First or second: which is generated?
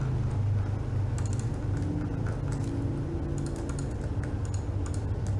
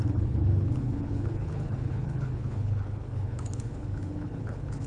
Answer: second